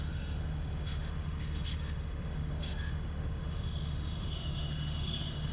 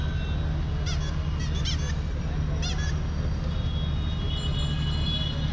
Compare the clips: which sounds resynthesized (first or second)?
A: first